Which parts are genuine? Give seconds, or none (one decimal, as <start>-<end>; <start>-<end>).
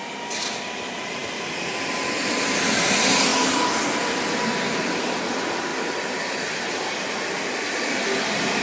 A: 0.0-5.7; 6.6-8.6